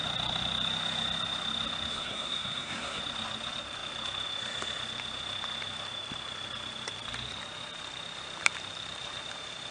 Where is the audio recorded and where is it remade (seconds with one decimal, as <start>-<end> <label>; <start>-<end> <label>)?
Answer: 0.0-1.9 recorded; 1.9-3.0 remade; 3.0-9.7 recorded